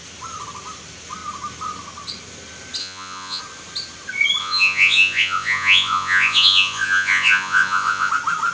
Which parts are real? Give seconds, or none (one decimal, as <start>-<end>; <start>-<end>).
0.0-2.8; 3.4-4.4; 8.1-8.5